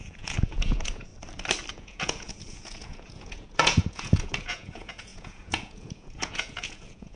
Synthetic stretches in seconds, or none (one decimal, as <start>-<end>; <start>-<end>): 0.0-1.1; 1.7-7.2